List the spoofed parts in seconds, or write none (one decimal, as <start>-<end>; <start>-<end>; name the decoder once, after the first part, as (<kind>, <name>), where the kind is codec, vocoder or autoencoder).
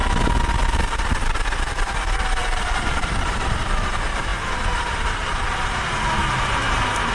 2.4-3.6 (vocoder, BigVGAN v2)